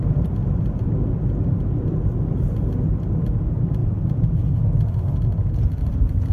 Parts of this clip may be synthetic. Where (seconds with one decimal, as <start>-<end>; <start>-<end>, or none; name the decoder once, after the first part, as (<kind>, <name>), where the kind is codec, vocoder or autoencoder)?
3.8-4.5 (vocoder, Vocos)